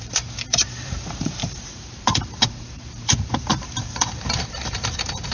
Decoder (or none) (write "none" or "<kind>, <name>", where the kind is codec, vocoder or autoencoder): vocoder, BigVGAN v2